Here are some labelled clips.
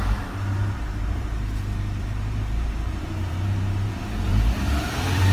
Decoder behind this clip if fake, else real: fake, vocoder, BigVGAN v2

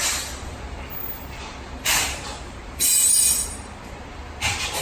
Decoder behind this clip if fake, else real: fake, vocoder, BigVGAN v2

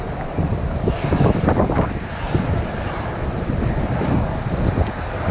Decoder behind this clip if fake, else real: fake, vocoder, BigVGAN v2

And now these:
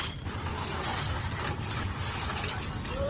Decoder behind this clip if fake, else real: fake, vocoder, BigVGAN v2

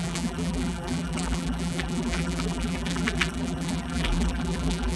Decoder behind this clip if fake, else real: fake, vocoder, BigVGAN v2